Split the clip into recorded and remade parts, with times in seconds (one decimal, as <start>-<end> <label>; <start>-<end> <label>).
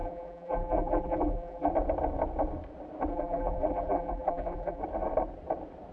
0.0-1.7 remade; 1.7-3.1 recorded; 3.1-4.8 remade; 4.8-5.9 recorded